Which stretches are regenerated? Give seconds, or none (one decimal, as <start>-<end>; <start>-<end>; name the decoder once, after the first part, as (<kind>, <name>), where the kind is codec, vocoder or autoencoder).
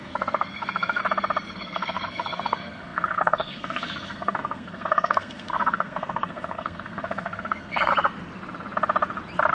0.0-1.0 (codec, SNAC); 1.5-7.9